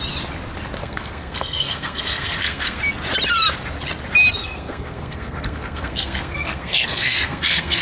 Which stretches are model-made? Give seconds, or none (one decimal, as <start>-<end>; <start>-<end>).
0.8-2.8; 4.4-7.8